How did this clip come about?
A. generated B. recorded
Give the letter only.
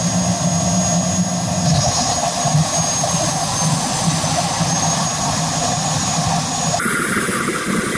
B